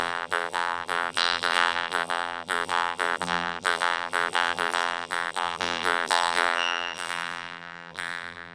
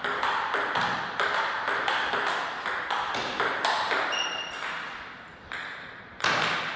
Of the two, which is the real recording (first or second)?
second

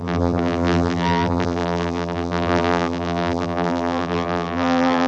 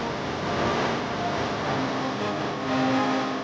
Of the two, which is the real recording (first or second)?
second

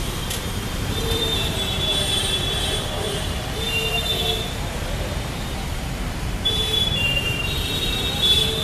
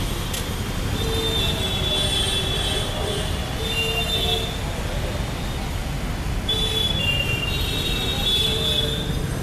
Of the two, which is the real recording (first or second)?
second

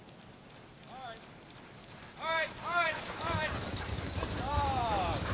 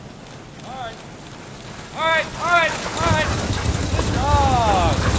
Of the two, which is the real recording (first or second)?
second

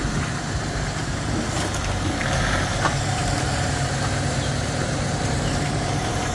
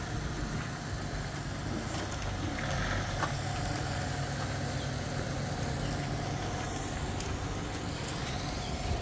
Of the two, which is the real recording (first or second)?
second